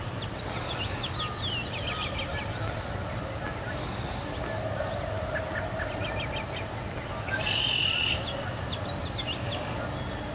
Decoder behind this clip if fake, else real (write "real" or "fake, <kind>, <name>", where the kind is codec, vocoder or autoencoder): real